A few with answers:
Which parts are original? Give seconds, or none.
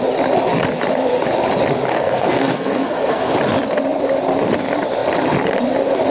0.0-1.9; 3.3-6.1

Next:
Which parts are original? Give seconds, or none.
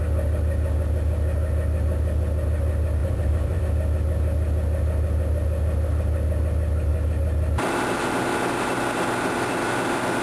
0.0-3.0; 3.6-10.2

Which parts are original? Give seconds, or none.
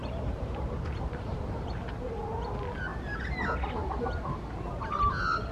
2.2-5.5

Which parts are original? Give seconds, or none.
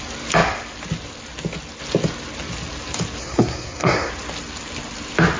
0.0-3.2; 4.1-5.4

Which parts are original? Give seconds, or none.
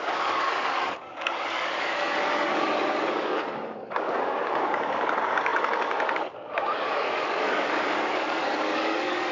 none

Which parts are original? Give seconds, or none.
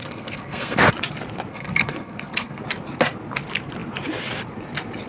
0.9-1.5; 2.6-5.1